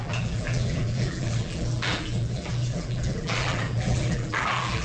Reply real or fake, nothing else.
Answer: fake